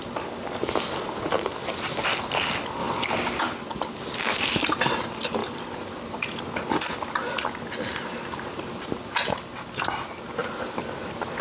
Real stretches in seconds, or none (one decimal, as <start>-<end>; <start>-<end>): 0.0-2.8; 3.4-10.4; 11.0-11.4